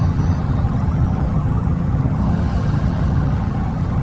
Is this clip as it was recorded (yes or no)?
no